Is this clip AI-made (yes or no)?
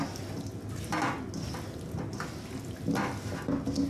no